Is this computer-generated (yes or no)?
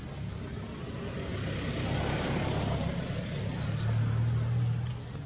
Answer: no